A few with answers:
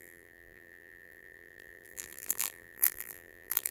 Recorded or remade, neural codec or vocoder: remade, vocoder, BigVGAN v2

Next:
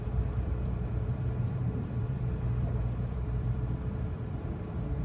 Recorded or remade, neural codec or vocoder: remade, vocoder, BigVGAN v2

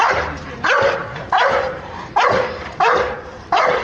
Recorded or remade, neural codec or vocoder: remade, vocoder, BigVGAN v2